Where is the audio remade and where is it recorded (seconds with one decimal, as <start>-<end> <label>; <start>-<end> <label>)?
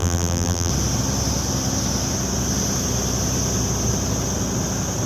0.0-0.7 remade; 0.7-5.1 recorded